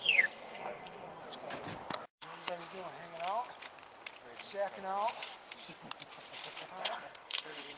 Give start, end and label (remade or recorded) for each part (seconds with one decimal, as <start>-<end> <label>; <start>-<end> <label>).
0.0-1.2 remade; 1.2-2.2 recorded; 2.2-2.6 remade; 2.6-6.8 recorded; 6.8-7.8 remade